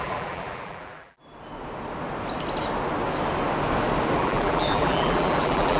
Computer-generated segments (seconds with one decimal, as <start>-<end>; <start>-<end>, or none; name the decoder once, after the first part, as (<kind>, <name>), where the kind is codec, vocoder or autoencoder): 0.0-1.2 (vocoder, BigVGAN v2); 4.2-5.8